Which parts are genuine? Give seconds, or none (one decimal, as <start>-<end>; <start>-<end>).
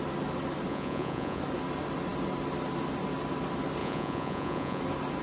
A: 0.0-0.7; 1.4-3.8; 4.8-5.2